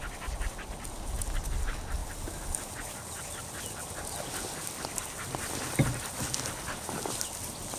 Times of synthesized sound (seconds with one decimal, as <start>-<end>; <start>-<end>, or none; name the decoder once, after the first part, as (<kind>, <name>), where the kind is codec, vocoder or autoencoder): none